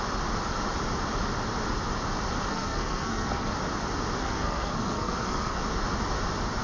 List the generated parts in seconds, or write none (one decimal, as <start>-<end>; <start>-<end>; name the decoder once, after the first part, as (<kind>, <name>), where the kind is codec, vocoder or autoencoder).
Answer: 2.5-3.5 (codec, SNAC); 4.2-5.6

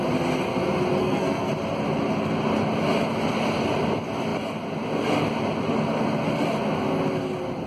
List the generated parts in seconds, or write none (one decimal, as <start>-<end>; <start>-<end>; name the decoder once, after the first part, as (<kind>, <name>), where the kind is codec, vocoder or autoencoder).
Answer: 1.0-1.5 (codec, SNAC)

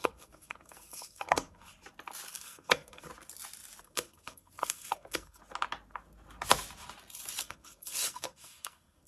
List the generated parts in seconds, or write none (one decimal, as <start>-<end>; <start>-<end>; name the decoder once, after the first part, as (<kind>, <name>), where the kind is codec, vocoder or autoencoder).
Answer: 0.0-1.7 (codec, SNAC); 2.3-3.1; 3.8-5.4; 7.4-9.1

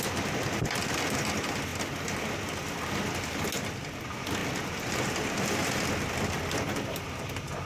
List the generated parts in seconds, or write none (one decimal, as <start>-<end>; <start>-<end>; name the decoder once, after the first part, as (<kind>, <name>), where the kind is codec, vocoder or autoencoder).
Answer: none

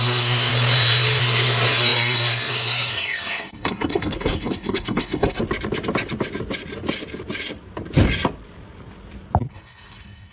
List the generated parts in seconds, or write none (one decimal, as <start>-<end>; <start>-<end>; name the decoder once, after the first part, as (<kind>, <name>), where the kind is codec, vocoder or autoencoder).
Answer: 0.0-0.5 (codec, SNAC); 1.2-5.4; 9.5-10.3